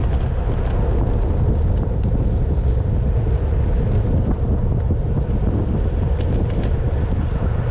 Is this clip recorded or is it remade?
recorded